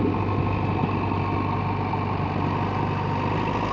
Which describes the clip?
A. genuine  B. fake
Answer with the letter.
A